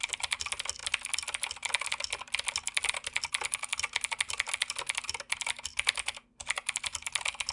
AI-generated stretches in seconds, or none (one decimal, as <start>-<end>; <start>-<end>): none